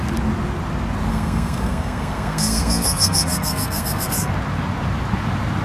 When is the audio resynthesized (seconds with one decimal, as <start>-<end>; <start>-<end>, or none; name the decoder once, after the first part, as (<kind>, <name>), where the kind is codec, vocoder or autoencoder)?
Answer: 1.1-4.3 (codec, SNAC)